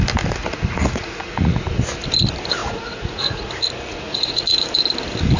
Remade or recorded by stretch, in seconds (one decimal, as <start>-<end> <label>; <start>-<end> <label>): 0.0-0.4 recorded; 0.4-1.6 remade; 1.6-2.6 recorded; 2.6-3.5 remade; 3.5-3.9 recorded; 3.9-4.5 remade; 4.5-5.4 recorded